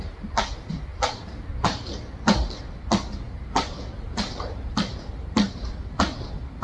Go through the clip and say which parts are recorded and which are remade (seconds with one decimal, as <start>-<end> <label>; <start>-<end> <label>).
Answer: 0.0-6.6 recorded